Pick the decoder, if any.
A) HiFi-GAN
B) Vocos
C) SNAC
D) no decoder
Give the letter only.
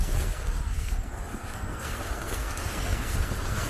C